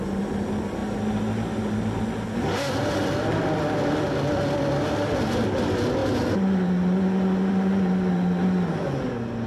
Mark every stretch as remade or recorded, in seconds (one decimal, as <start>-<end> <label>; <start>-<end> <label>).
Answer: 0.0-9.5 recorded